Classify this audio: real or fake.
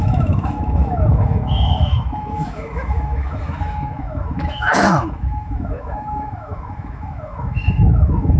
fake